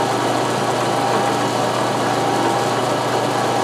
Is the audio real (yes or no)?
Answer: yes